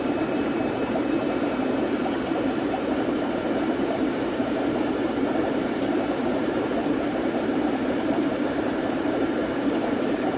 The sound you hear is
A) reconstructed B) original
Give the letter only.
A